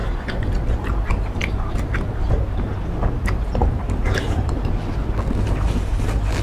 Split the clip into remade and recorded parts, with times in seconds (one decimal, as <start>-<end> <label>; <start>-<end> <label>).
0.0-2.3 remade; 2.3-3.6 recorded; 3.6-4.7 remade; 4.7-6.4 recorded